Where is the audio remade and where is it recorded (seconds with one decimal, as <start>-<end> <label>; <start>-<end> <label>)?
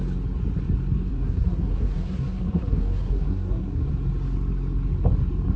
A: 0.0-1.1 recorded; 1.1-3.9 remade; 3.9-5.6 recorded